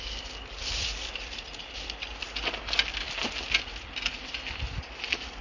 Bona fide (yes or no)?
yes